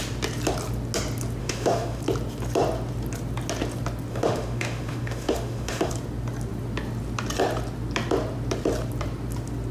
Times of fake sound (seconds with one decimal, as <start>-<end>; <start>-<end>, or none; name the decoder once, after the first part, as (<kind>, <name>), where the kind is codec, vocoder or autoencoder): 1.4-2.0 (autoencoder, DAC-VAE); 4.1-5.9